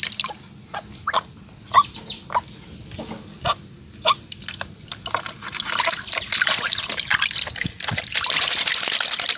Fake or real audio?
real